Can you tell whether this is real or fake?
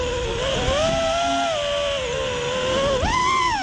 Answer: real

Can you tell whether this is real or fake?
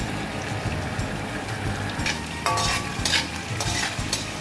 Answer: fake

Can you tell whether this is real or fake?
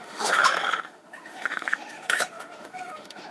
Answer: fake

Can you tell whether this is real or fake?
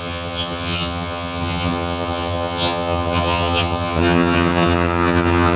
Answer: fake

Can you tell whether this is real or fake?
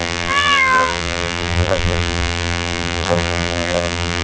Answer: fake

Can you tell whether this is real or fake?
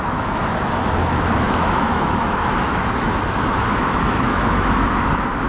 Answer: fake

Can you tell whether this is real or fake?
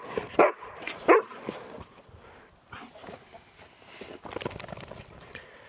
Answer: real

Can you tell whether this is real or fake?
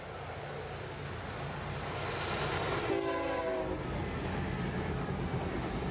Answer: real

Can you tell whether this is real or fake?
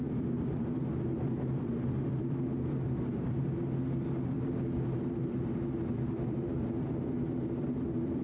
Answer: fake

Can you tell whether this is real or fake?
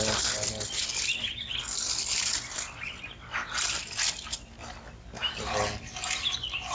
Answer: real